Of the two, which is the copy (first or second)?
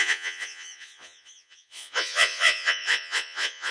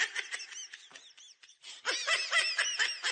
first